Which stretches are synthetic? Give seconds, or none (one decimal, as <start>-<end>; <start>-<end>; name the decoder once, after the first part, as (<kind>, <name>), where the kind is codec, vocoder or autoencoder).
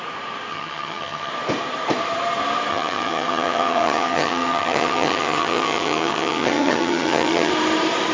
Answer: 0.5-1.3 (vocoder, HiFi-GAN); 2.7-7.5